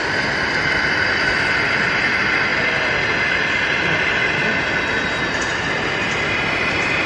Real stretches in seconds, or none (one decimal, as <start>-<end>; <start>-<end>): 0.0-7.1